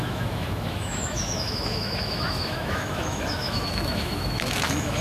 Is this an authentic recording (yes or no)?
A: no